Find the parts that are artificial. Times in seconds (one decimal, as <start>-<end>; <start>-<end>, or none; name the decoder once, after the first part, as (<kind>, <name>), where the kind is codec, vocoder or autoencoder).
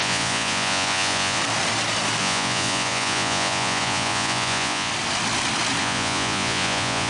0.0-1.4 (vocoder, Vocos); 2.2-4.9; 5.8-7.1